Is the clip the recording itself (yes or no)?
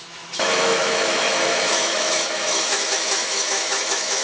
no